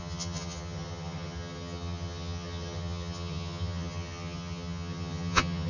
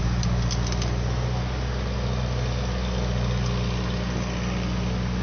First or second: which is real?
second